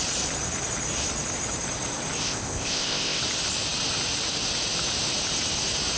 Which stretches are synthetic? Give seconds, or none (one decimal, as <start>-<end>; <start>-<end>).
2.2-3.2